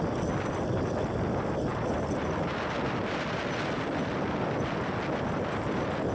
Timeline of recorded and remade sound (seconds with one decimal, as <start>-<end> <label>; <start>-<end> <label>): 0.0-6.1 recorded